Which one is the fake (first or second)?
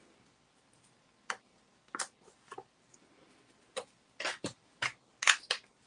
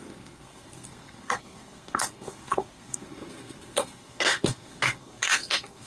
second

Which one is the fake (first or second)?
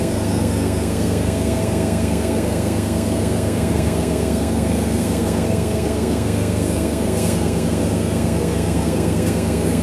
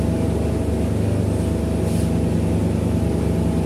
first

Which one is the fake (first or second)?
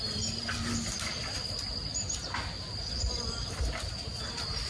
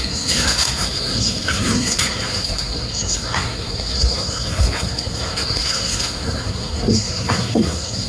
second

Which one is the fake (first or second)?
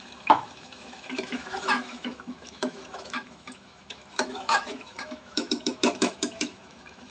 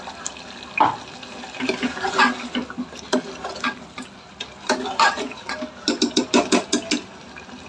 first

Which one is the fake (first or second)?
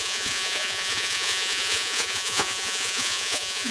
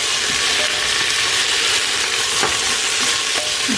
first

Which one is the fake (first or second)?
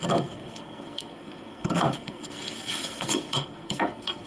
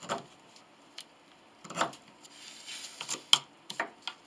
first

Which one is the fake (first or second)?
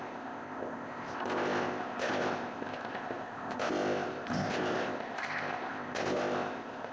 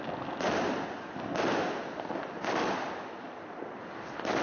first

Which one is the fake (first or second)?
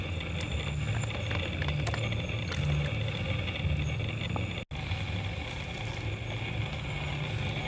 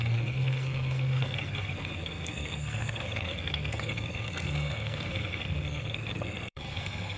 second